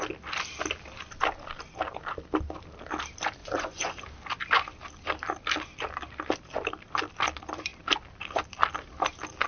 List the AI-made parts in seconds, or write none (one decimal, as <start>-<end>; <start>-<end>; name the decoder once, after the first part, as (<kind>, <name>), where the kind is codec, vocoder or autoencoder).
3.4-4.0 (vocoder, Vocos)